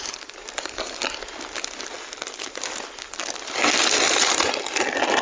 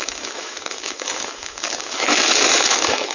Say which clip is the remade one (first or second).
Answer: second